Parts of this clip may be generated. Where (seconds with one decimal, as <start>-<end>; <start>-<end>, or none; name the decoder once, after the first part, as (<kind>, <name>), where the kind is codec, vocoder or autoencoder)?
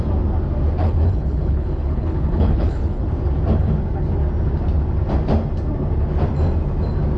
0.8-3.0 (codec, HILCodec)